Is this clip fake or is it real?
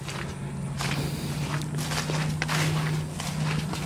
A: real